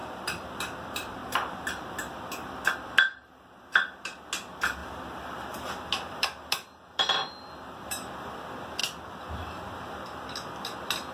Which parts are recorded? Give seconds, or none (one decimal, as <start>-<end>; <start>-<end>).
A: 0.5-4.8; 8.1-11.1